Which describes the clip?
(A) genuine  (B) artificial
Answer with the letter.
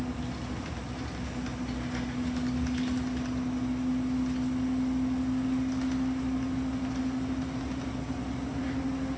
A